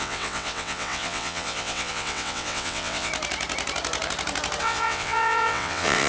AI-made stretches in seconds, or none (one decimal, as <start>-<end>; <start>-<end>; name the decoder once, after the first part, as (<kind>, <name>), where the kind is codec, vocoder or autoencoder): 0.0-3.1 (vocoder, WaveNeXt); 4.6-6.1